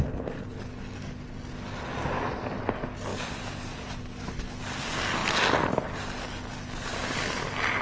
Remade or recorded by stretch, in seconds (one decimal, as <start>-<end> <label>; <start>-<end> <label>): 0.0-7.8 recorded